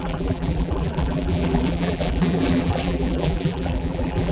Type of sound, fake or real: fake